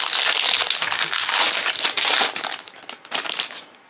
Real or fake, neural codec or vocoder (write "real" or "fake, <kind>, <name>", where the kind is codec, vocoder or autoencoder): real